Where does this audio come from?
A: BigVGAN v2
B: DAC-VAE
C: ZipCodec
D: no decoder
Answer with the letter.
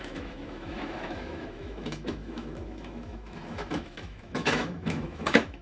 B